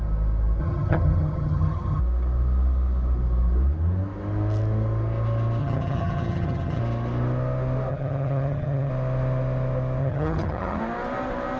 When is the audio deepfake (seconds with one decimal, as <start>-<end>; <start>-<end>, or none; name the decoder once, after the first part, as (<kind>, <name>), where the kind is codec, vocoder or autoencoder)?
0.6-2.0 (vocoder, HiFi-GAN); 5.6-6.8; 7.9-8.9; 10.0-10.8